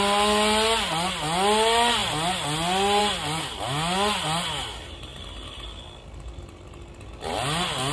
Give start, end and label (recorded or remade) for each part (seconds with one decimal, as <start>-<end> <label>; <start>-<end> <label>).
0.0-7.9 recorded